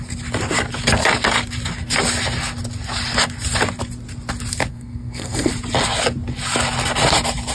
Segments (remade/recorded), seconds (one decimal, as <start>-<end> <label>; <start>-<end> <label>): 0.0-4.7 recorded; 4.7-5.5 remade; 5.5-7.5 recorded